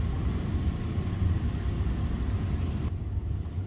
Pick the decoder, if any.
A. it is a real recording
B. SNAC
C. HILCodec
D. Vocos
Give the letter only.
A